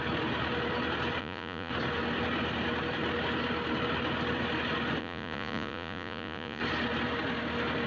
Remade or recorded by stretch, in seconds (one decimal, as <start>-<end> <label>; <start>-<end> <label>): 0.0-1.2 recorded; 1.2-1.7 remade; 1.7-5.0 recorded; 5.0-6.6 remade; 6.6-7.9 recorded